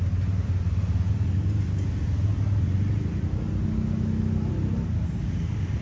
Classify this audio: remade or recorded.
recorded